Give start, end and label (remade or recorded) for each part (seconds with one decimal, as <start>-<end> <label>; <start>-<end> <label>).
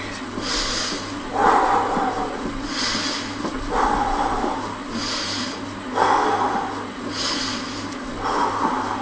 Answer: 0.0-9.0 recorded